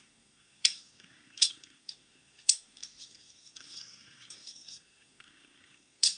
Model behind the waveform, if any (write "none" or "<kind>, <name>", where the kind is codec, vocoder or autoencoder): codec, SNAC